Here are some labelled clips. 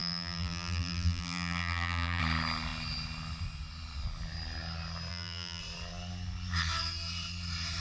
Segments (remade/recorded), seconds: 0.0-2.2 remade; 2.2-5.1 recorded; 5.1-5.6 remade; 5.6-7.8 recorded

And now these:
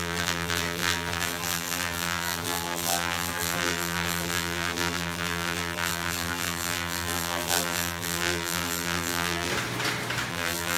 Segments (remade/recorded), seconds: 0.0-9.5 remade; 9.5-10.3 recorded; 10.3-10.8 remade

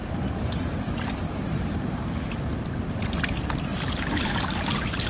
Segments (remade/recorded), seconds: 0.0-3.1 remade; 3.1-3.7 recorded; 3.7-4.3 remade; 4.3-5.1 recorded

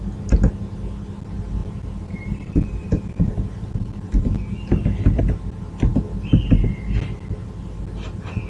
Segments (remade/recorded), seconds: 0.0-1.6 recorded; 1.6-5.2 remade; 5.2-8.5 recorded

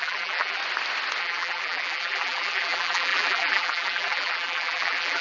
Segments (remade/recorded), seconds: 0.0-0.6 remade; 0.6-1.2 recorded; 1.2-5.2 remade

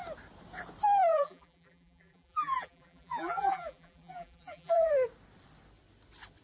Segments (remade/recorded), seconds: 0.0-1.1 recorded; 1.1-4.9 remade; 4.9-6.4 recorded

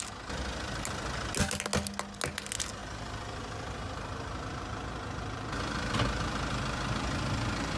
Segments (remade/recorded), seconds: 0.0-2.8 recorded; 2.8-7.8 remade

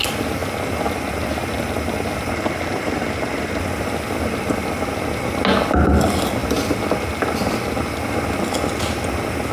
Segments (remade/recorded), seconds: 0.0-9.5 recorded